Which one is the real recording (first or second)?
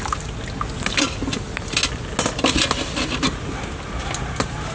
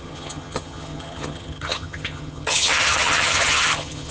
first